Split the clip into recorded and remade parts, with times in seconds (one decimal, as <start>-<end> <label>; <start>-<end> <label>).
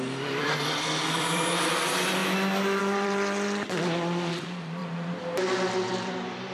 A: 0.0-2.2 remade; 2.2-2.8 recorded; 2.8-6.5 remade